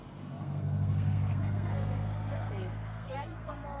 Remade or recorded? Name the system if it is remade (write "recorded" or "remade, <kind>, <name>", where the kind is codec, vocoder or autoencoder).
remade, codec, SNAC